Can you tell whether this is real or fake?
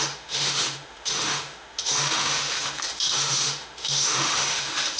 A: fake